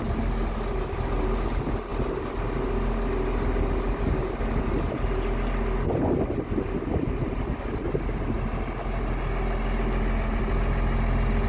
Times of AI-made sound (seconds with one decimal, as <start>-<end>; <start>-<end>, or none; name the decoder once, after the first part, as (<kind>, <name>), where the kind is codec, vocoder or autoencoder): none